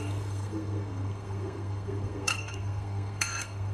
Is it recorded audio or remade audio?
remade